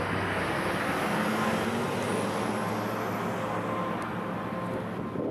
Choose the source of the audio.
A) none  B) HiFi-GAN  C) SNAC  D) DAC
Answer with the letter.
A